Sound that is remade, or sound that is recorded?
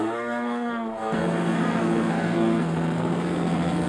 remade